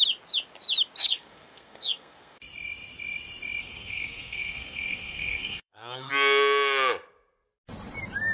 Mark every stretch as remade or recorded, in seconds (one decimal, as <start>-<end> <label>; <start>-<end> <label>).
0.0-1.0 recorded; 1.0-2.4 remade; 2.4-3.6 recorded; 3.6-6.1 remade; 6.1-8.3 recorded